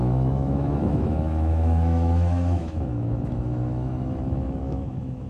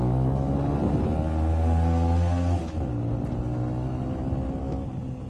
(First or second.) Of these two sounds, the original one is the second